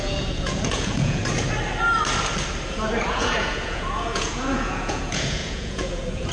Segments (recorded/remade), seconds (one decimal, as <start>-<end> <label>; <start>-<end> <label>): 0.0-1.2 remade; 1.2-3.1 recorded; 3.1-6.3 remade